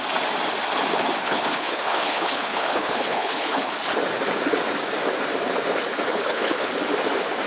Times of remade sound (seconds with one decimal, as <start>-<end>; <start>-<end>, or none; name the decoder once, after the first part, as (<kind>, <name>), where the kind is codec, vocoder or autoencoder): 1.2-3.7 (codec, HILCodec); 6.1-6.7